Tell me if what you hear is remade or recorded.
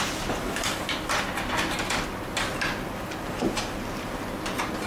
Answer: recorded